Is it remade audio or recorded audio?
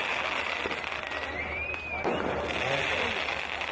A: recorded